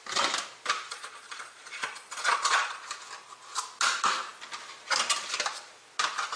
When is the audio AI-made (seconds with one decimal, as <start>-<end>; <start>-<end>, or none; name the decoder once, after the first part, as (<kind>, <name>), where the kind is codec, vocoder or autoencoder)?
0.9-2.8 (vocoder, Vocos)